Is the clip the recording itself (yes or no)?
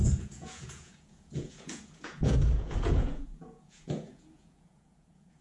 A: no